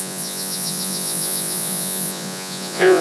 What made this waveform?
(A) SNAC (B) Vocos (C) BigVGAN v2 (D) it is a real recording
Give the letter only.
B